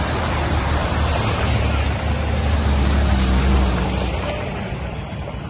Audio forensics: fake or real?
real